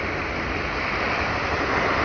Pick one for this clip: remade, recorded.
remade